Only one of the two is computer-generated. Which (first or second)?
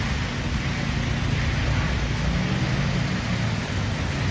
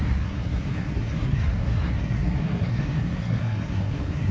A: second